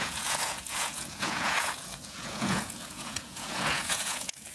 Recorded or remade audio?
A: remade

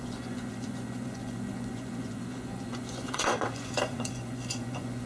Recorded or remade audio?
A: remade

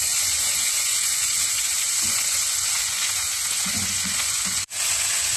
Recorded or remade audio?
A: remade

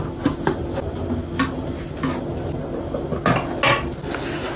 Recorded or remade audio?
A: recorded